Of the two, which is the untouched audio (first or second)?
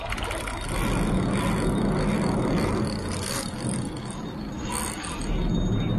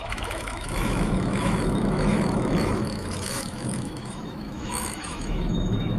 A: first